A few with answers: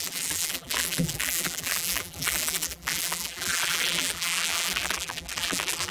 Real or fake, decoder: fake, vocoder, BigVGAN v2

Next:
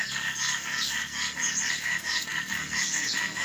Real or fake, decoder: fake, codec, SNAC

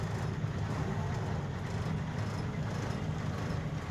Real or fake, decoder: real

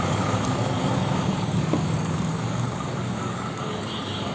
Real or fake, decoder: fake, codec, DAC